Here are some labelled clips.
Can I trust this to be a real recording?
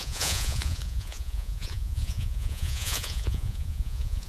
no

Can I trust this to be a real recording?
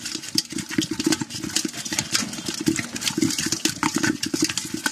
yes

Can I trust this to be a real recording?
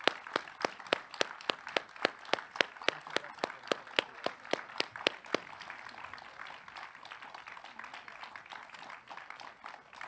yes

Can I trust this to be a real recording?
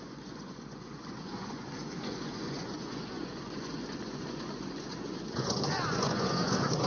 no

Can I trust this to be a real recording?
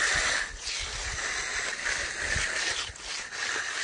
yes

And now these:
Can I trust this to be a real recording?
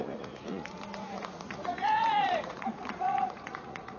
no